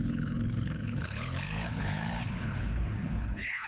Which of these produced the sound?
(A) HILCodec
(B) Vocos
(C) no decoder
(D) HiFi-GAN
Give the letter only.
A